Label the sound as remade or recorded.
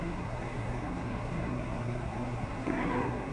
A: remade